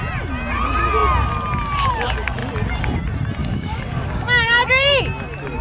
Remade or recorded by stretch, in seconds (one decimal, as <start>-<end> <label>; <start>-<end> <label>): 0.0-3.4 recorded; 3.4-5.0 remade; 5.0-5.6 recorded